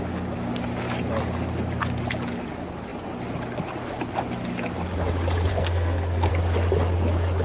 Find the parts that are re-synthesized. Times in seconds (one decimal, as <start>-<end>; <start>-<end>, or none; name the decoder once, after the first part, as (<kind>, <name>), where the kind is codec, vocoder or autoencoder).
5.5-6.3 (codec, SNAC)